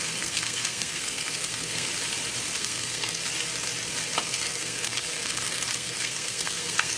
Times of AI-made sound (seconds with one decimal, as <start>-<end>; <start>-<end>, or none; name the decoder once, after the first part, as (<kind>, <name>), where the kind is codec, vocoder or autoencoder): 0.0-1.9 (codec, SNAC); 2.6-3.2; 4.2-7.0